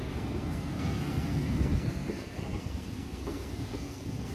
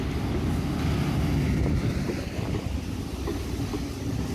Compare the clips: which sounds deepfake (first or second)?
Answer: first